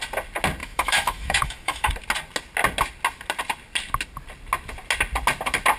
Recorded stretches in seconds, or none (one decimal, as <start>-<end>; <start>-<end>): 0.0-0.6; 1.9-5.8